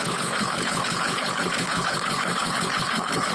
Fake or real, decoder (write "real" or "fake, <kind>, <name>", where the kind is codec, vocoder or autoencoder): fake, codec, HILCodec